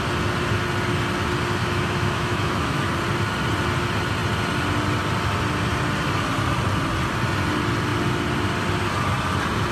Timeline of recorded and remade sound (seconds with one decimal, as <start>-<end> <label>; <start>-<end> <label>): 0.0-1.6 recorded; 1.6-2.9 remade; 2.9-9.7 recorded